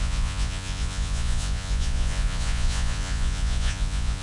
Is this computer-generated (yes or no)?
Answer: yes